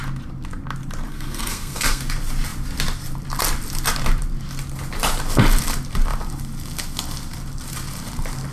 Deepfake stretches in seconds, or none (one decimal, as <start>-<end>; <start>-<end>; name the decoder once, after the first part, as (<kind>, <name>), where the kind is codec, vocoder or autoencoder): 1.1-2.0 (codec, SNAC)